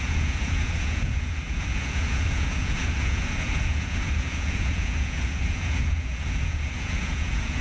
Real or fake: fake